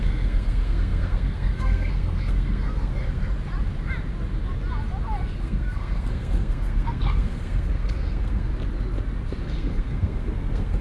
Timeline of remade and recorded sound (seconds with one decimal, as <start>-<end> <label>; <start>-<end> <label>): 0.0-3.3 remade; 3.3-5.4 recorded; 5.4-8.5 remade; 8.5-9.4 recorded; 9.4-10.8 remade